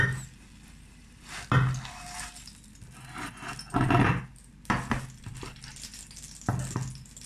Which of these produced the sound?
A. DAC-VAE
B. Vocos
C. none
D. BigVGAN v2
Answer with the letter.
C